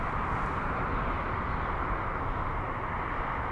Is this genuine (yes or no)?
yes